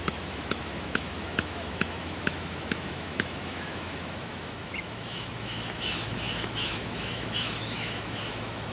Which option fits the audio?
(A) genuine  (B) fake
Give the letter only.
B